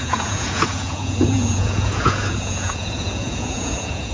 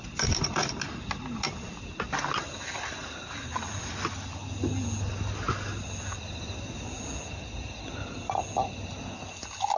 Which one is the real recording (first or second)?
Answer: second